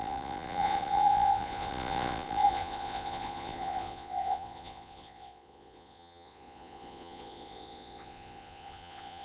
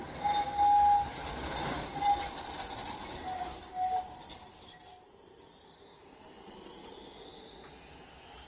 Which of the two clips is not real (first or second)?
first